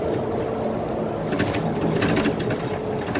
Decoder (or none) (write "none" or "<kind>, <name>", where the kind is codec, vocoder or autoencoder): none